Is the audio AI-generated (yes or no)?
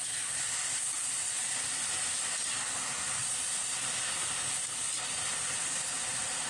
no